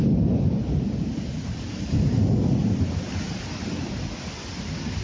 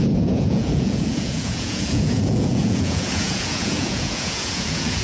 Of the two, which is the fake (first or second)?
second